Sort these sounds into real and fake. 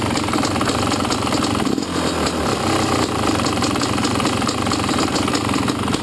real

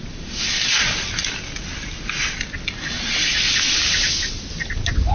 real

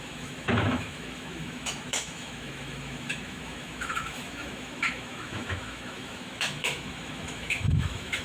fake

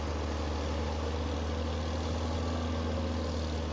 real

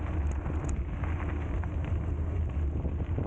real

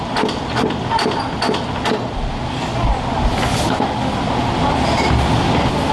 real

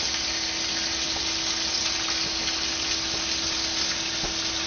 real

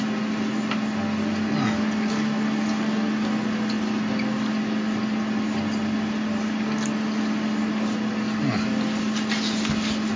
real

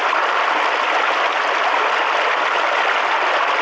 real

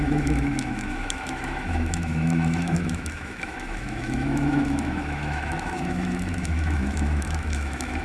fake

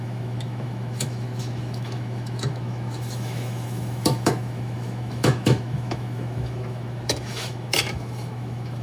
fake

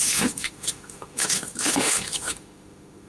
fake